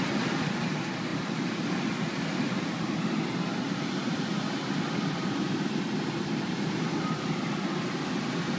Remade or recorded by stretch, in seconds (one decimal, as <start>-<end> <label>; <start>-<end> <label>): 0.0-8.6 recorded